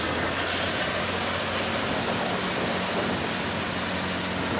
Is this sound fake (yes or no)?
no